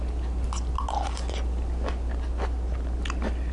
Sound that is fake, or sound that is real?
real